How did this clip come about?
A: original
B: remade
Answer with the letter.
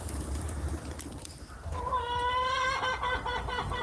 A